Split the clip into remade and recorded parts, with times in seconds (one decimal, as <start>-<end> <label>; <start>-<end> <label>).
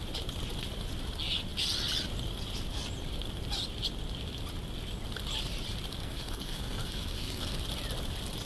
0.0-6.0 recorded; 6.0-7.6 remade; 7.6-8.5 recorded